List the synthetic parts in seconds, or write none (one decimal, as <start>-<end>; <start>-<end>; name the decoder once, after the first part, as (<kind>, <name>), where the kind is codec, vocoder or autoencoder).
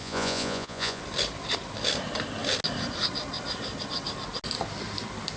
0.0-1.0 (vocoder, Vocos)